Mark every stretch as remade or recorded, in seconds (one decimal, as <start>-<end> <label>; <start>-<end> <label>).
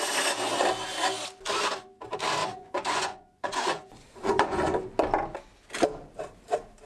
0.0-2.4 recorded; 2.4-4.9 remade; 4.9-6.9 recorded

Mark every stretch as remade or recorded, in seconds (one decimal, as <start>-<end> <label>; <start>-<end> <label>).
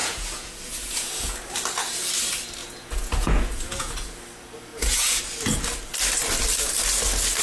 0.0-1.3 remade; 1.3-2.6 recorded; 2.6-4.2 remade; 4.2-4.7 recorded; 4.7-5.2 remade; 5.2-7.4 recorded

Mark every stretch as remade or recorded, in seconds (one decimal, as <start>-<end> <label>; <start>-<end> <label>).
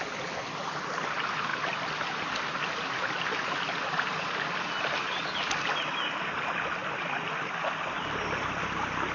0.0-9.1 recorded